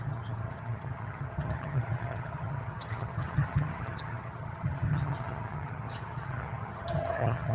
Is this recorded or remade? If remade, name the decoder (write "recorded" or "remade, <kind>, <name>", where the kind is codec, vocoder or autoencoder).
remade, vocoder, HiFi-GAN